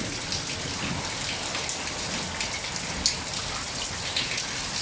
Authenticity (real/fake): real